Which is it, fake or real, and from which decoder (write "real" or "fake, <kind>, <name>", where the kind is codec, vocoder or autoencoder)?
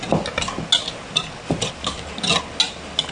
real